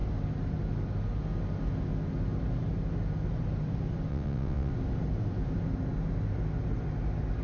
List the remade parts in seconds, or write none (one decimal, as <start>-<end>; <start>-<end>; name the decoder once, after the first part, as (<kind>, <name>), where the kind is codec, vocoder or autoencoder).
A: 4.1-4.7 (vocoder, WaveNeXt)